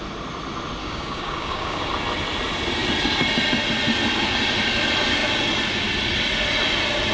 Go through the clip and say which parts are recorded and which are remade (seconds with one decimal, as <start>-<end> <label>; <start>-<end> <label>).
0.0-0.8 recorded; 0.8-1.9 remade; 1.9-7.1 recorded